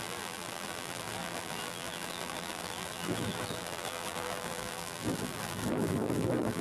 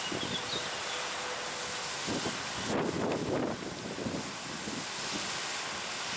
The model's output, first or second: first